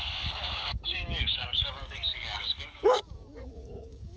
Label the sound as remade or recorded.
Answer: remade